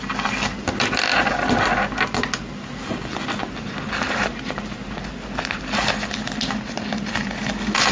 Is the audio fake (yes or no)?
no